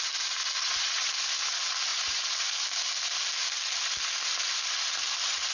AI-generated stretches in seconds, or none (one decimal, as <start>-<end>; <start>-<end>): 0.6-1.1